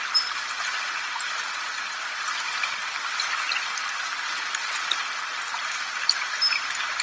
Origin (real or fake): real